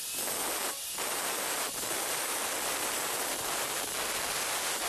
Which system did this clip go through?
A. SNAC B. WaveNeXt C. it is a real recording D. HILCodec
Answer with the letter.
C